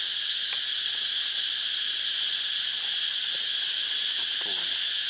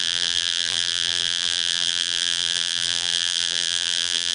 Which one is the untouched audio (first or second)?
first